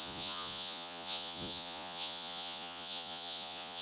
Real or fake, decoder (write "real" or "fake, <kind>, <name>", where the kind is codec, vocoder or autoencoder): fake, vocoder, Vocos